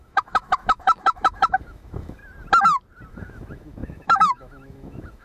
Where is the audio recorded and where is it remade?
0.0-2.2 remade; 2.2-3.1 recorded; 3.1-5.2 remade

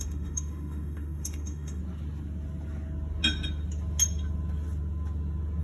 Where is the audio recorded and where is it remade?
0.0-1.8 remade; 1.8-5.6 recorded

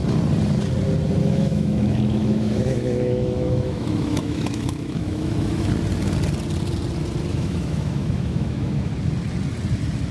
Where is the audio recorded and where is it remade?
0.0-1.2 recorded; 1.2-5.7 remade; 5.7-7.3 recorded; 7.3-8.9 remade; 8.9-10.1 recorded

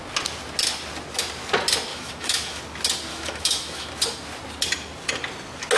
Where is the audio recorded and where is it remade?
0.0-1.9 recorded; 1.9-2.6 remade; 2.6-3.1 recorded; 3.1-3.9 remade; 3.9-5.8 recorded

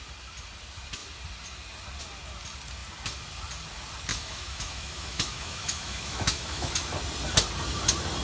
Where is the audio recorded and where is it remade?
0.0-4.1 recorded; 4.1-6.7 remade; 6.7-8.2 recorded

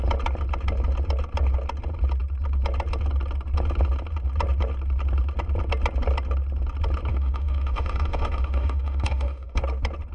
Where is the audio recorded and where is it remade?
0.0-7.1 recorded; 7.1-9.6 remade; 9.6-10.1 recorded

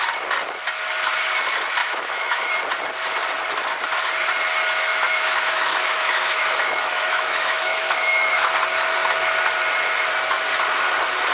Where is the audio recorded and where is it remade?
0.0-1.8 recorded; 1.8-2.5 remade; 2.5-4.9 recorded; 4.9-8.5 remade; 8.5-11.3 recorded